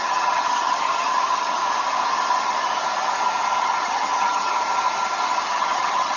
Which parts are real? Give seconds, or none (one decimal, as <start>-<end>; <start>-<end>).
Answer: 1.6-3.6; 4.6-5.5